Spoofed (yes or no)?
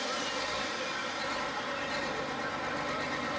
no